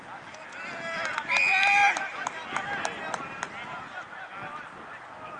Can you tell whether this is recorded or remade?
recorded